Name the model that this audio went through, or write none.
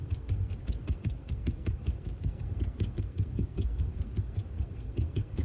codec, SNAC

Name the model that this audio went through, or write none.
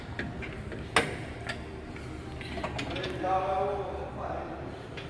none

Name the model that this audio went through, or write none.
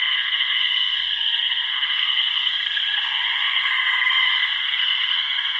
codec, SNAC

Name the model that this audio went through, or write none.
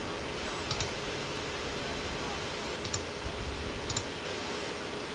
none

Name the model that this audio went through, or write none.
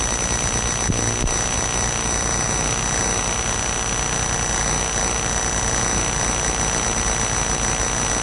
none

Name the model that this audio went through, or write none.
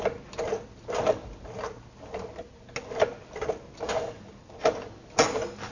none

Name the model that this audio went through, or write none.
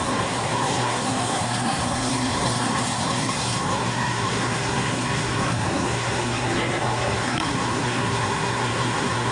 codec, SNAC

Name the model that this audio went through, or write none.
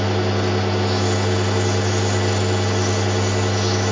none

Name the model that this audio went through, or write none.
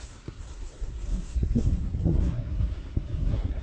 codec, SNAC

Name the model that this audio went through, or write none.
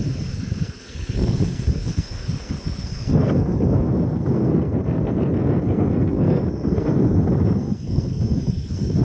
codec, SNAC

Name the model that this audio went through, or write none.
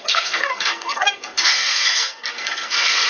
codec, SNAC